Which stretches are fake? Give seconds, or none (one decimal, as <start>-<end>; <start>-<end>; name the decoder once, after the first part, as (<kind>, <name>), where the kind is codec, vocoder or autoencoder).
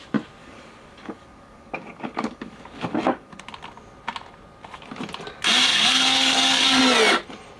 0.4-3.4 (codec, DAC); 5.7-6.8